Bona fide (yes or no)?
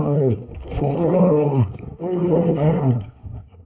no